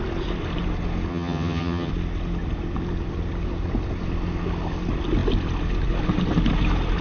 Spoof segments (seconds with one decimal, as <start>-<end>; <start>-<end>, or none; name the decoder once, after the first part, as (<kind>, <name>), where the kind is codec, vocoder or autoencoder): 1.1-1.9 (vocoder, HiFi-GAN)